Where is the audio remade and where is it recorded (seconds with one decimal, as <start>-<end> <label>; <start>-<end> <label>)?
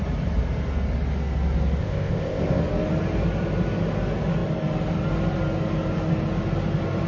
0.0-1.8 recorded; 1.8-2.6 remade; 2.6-7.1 recorded